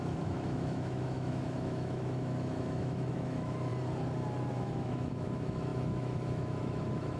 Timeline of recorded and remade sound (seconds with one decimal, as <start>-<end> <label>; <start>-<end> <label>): 0.0-3.7 remade; 3.7-4.5 recorded; 4.5-7.2 remade